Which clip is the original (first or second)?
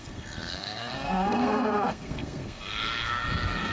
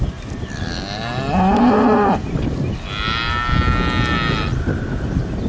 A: second